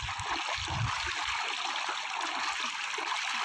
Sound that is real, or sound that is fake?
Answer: real